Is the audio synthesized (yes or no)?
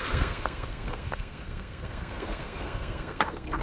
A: yes